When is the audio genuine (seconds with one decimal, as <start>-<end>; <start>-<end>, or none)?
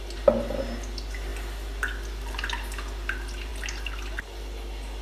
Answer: 0.0-5.0